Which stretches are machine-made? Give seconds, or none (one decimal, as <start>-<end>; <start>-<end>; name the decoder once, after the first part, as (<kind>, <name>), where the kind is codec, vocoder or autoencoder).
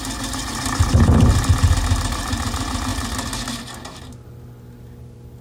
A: none